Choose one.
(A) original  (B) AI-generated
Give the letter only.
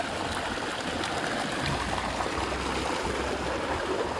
A